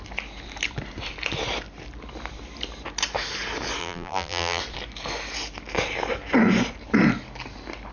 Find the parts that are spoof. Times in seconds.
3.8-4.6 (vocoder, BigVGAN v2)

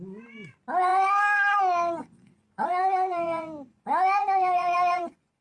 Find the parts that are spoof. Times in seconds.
2.0-5.4 (vocoder, Vocos)

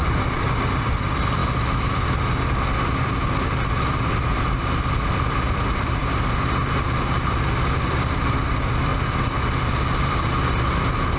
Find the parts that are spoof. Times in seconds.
0.0-1.4 (vocoder, BigVGAN v2); 5.6-6.0; 7.6-8.9; 9.7-11.2

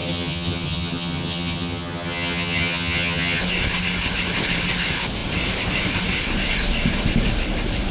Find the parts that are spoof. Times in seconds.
0.0-3.4 (vocoder, HiFi-GAN)

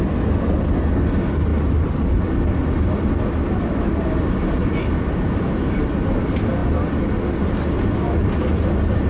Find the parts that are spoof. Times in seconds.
1.5-2.2 (vocoder, BigVGAN v2)

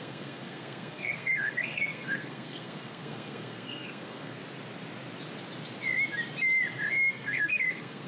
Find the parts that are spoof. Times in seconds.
0.0-4.4 (codec, SNAC); 7.1-8.1